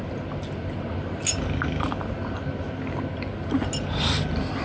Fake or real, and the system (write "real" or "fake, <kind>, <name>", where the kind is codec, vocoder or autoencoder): real